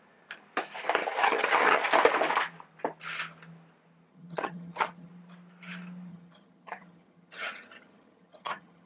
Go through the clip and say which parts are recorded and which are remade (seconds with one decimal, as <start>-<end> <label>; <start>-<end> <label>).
0.0-1.0 recorded; 1.0-1.8 remade; 1.8-4.1 recorded; 4.1-5.1 remade; 5.1-6.1 recorded; 6.1-8.9 remade